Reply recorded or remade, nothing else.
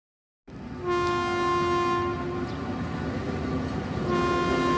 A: recorded